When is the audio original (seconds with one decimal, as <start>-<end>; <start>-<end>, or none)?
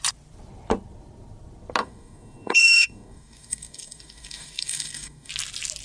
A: 0.0-1.8; 5.3-5.8